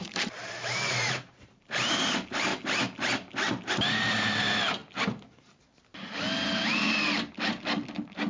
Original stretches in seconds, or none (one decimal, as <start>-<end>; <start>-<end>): 2.5-3.7; 4.8-5.4; 5.9-8.3

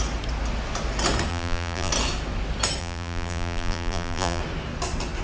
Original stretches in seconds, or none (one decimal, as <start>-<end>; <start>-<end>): 0.0-1.3; 1.9-2.8; 4.4-5.2

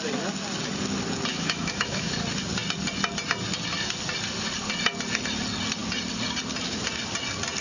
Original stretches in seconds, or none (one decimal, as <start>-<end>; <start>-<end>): 0.0-1.3; 2.1-7.6